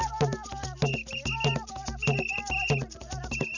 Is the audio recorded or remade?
recorded